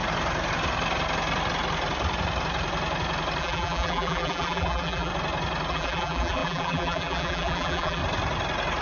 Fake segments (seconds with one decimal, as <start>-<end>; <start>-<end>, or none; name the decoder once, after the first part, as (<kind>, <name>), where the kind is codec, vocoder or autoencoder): 3.4-5.1 (vocoder, BigVGAN v2); 5.7-8.0